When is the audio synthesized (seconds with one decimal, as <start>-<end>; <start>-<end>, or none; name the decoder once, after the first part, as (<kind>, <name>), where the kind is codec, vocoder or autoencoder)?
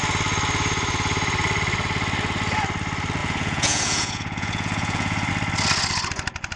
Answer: 3.2-5.3 (vocoder, Vocos)